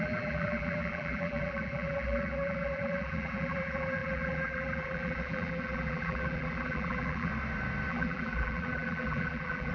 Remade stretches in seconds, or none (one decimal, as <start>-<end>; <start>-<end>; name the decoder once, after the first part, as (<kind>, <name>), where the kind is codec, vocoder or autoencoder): 0.0-7.3 (vocoder, BigVGAN v2); 7.9-9.7